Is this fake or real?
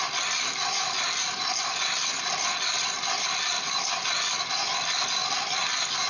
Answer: real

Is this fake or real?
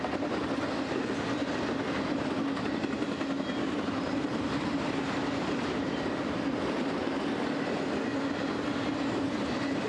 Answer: real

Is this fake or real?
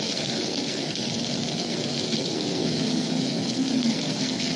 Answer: fake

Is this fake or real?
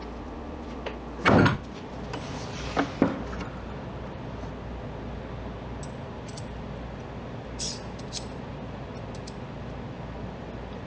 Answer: real